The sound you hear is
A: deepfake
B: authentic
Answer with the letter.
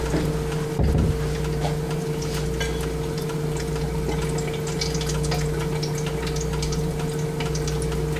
B